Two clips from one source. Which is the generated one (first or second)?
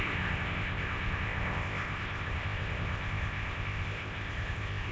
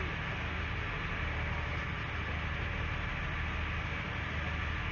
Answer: first